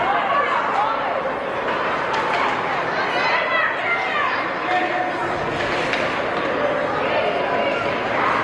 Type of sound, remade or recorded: recorded